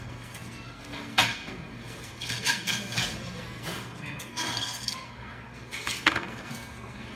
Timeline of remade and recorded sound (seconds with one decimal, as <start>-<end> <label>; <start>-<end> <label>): 0.0-7.2 remade